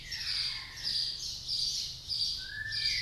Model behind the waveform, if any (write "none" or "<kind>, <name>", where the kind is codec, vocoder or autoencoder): none